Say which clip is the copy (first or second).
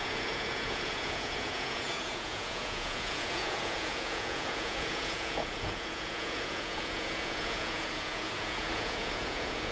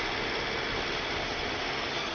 first